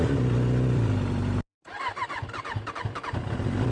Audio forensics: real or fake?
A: fake